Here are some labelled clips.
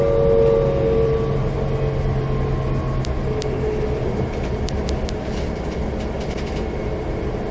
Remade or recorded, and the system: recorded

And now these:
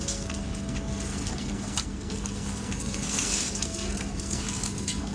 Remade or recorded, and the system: remade, codec, SNAC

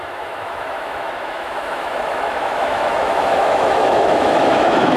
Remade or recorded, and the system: remade, autoencoder, DAC-VAE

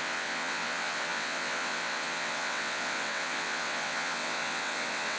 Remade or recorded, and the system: remade, vocoder, WaveNeXt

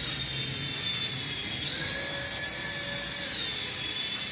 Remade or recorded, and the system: recorded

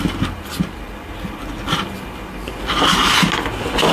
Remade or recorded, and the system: recorded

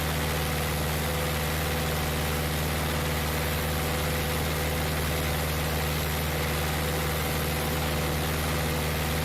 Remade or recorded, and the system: recorded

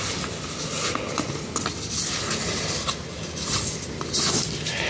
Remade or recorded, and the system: recorded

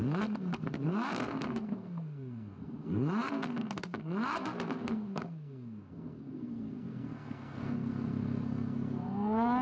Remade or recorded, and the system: remade, codec, SNAC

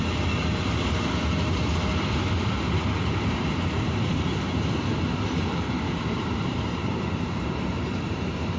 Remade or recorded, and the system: remade, vocoder, BigVGAN v2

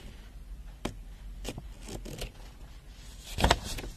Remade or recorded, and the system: recorded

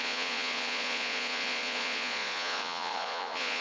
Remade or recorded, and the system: remade, vocoder, Vocos